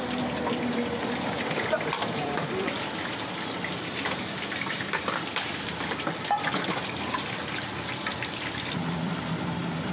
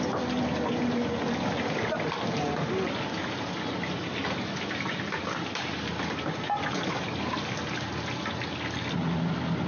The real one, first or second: second